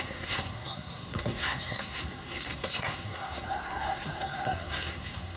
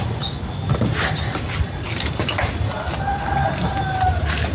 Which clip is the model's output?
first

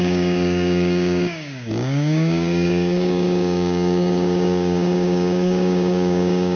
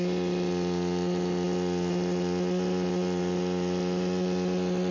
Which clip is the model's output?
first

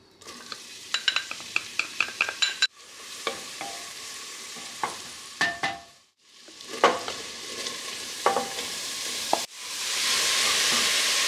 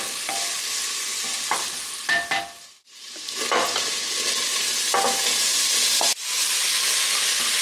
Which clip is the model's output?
first